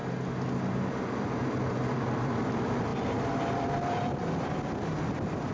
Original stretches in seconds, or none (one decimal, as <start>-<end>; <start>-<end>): 0.0-1.1